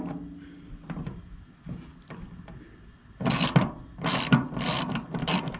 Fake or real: real